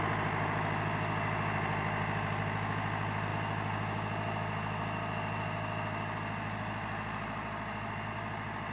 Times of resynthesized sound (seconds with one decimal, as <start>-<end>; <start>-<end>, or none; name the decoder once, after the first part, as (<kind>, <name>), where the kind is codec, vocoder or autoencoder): none